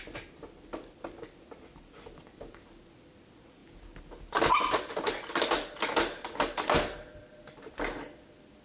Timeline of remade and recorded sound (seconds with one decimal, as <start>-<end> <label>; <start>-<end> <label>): 0.0-8.6 recorded